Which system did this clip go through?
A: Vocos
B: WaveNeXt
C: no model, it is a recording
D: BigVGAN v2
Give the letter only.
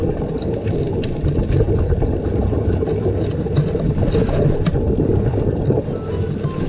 C